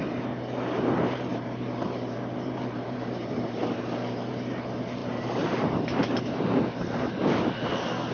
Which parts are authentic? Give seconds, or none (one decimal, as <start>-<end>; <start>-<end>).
0.0-1.3; 4.3-5.0; 6.2-8.1